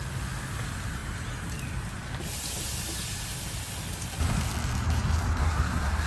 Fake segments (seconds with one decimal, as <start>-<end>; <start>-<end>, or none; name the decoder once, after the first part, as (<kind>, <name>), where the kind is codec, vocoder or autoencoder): 5.4-6.1 (codec, SNAC)